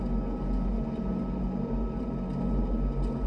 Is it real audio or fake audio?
real